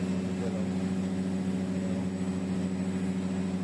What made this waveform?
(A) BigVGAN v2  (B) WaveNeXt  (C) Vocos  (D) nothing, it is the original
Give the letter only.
D